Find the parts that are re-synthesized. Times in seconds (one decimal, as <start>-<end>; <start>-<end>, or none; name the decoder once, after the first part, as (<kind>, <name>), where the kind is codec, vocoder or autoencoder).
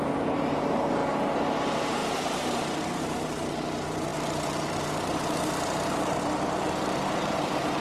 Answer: 0.0-7.8 (vocoder, BigVGAN v2)